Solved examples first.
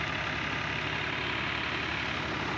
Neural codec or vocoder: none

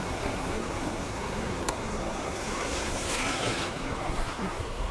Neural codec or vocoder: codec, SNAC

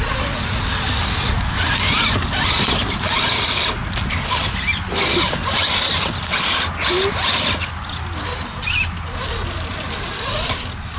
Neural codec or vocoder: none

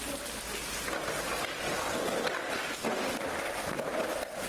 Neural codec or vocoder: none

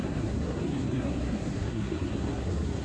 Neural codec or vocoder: codec, SNAC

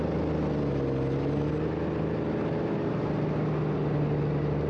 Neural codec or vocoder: none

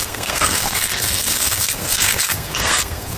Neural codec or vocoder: codec, SNAC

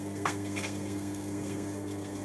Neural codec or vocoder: codec, SNAC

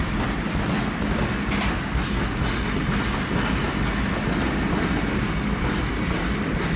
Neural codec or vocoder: none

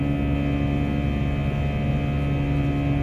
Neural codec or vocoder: none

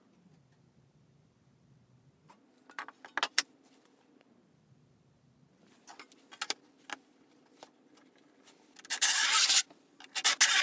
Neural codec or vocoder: none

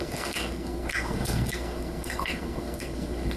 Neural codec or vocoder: codec, SNAC